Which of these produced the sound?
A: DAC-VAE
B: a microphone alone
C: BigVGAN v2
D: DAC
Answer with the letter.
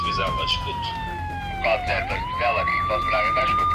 C